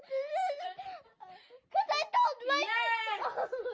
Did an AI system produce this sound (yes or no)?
no